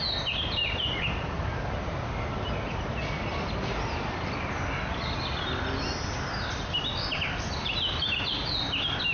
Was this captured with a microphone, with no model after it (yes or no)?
yes